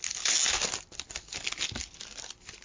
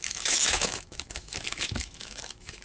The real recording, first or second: first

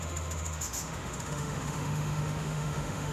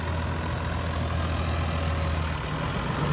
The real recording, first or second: second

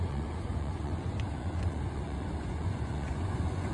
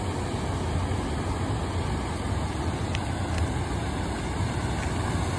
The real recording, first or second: second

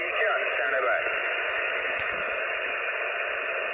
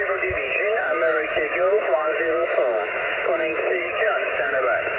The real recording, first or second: first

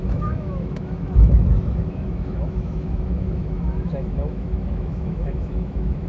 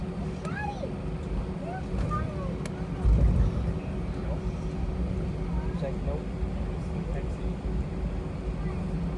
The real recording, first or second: second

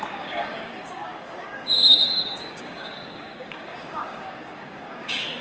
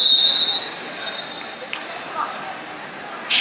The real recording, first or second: second